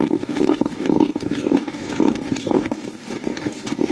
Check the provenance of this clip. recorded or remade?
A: remade